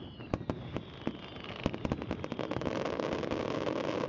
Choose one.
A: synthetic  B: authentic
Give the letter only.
B